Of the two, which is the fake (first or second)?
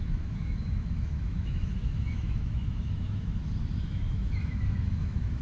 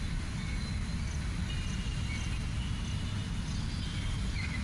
first